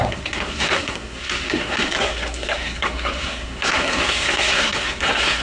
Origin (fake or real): fake